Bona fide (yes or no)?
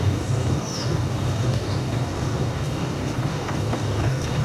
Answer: no